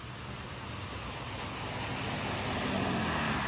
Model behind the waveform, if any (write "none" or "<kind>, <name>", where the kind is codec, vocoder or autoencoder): none